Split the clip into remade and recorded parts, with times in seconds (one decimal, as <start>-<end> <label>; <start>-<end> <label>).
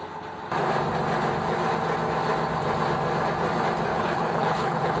0.0-3.9 recorded; 3.9-5.0 remade